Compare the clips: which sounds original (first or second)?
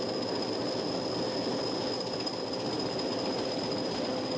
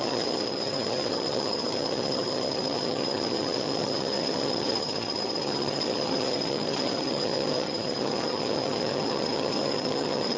first